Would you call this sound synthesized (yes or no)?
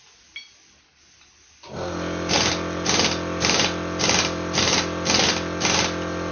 no